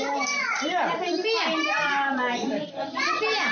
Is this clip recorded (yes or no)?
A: no